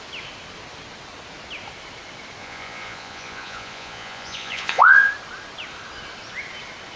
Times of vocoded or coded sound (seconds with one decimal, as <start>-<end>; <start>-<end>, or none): 2.4-5.1